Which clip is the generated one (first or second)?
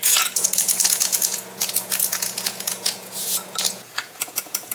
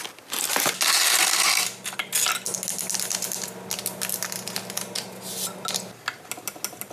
first